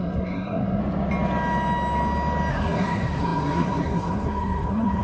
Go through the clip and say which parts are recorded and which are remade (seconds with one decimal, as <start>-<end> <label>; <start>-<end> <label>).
0.0-0.8 remade; 0.8-2.5 recorded; 2.5-5.0 remade